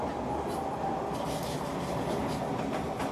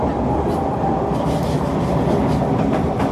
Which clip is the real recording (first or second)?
first